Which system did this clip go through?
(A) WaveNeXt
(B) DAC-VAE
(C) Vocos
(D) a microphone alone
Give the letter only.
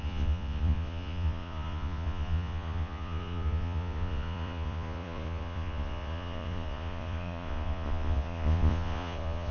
C